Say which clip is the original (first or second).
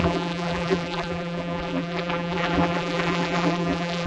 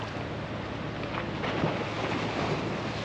second